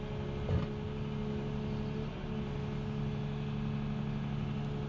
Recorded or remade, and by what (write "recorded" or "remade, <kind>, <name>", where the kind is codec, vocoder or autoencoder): recorded